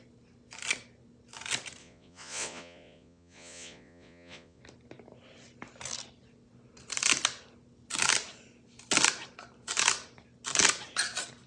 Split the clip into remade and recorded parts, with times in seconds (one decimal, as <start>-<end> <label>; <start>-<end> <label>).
0.0-1.8 recorded; 1.8-4.6 remade; 4.6-11.5 recorded